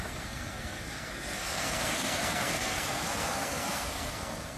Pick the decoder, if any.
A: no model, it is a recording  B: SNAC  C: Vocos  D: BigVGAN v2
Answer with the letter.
B